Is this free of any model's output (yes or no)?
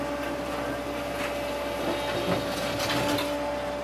yes